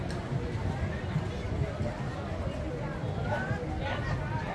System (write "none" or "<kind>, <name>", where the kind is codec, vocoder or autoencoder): none